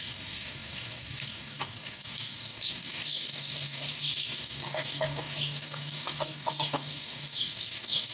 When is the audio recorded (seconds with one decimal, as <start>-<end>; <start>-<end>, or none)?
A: none